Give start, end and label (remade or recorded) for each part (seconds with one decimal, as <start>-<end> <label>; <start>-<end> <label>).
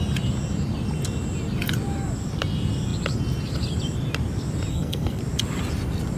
0.0-4.7 recorded; 4.7-5.2 remade; 5.2-6.2 recorded